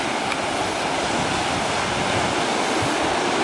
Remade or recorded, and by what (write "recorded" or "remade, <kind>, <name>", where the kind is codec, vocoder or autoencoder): recorded